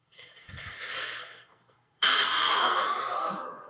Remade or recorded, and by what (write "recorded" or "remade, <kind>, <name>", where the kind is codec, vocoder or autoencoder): remade, codec, SNAC